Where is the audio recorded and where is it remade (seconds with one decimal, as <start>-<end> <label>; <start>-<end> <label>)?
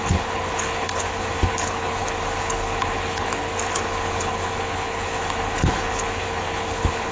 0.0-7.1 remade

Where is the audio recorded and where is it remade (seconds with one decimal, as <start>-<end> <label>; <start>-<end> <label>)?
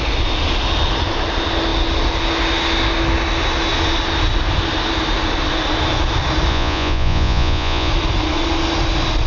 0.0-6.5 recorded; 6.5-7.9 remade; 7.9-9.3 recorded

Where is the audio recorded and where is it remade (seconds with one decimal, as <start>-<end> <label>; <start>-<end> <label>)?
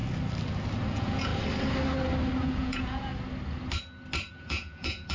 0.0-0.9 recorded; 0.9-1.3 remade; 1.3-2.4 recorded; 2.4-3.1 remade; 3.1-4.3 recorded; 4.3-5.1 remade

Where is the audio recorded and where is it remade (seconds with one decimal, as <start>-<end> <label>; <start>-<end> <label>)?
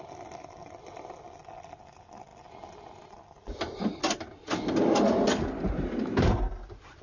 0.0-7.0 recorded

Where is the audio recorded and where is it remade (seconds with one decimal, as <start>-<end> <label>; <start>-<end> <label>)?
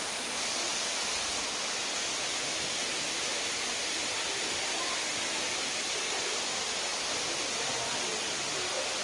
0.0-3.3 recorded; 3.3-5.9 remade; 5.9-9.0 recorded